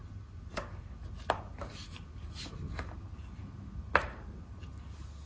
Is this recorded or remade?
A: recorded